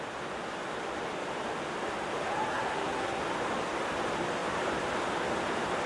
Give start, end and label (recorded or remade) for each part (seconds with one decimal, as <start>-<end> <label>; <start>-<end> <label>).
0.0-2.5 recorded; 2.5-3.2 remade; 3.2-5.9 recorded